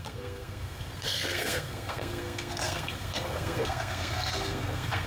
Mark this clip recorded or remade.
remade